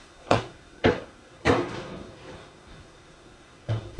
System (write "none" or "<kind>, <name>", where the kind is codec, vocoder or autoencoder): codec, SNAC